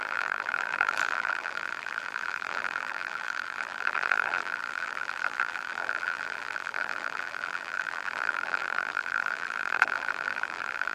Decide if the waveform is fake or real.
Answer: fake